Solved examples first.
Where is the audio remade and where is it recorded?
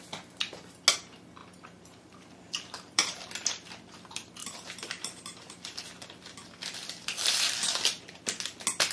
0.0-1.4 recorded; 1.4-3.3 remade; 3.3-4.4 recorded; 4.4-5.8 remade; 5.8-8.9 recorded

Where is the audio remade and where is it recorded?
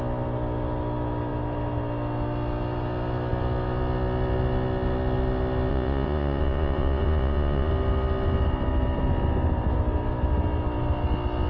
0.0-5.7 recorded; 5.7-7.7 remade; 7.7-11.5 recorded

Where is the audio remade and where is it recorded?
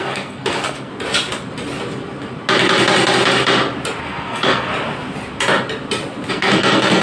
0.0-0.9 remade; 0.9-4.0 recorded; 4.0-4.7 remade; 4.7-6.3 recorded; 6.3-7.0 remade